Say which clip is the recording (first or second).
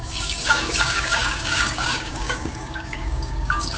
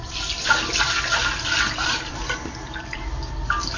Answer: second